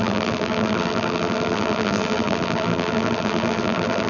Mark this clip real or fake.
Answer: fake